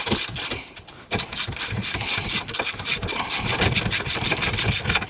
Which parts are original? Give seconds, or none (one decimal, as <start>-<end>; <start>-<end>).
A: 0.0-5.1